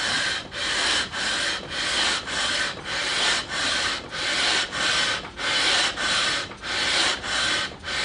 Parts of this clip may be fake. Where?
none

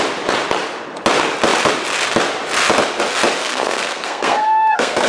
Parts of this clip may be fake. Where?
3.4-5.1 (codec, SNAC)